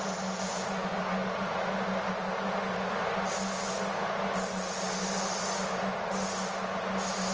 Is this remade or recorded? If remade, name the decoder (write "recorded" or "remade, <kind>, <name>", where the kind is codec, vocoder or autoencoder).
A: recorded